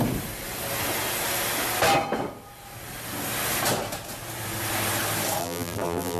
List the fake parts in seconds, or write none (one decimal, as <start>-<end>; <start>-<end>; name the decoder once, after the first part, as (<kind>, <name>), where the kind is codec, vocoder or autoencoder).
5.4-6.2 (vocoder, BigVGAN v2)